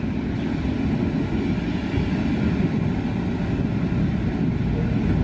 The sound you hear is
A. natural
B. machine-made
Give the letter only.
A